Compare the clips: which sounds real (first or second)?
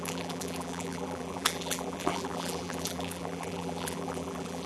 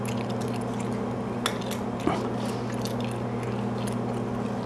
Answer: second